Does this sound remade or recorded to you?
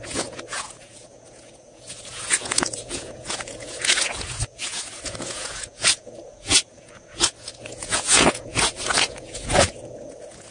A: remade